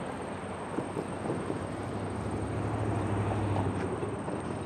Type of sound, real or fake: fake